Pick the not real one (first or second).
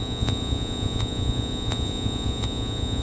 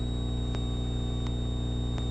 first